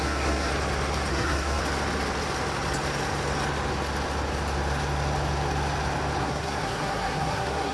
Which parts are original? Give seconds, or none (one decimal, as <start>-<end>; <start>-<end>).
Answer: 0.5-1.1; 1.6-6.2